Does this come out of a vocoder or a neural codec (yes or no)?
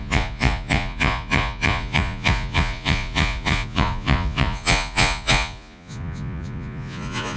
yes